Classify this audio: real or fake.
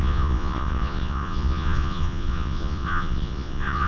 fake